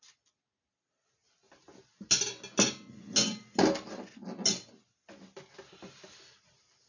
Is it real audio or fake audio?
real